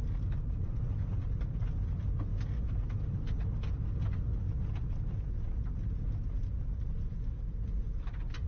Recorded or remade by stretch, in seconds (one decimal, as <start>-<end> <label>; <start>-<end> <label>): 0.0-8.5 recorded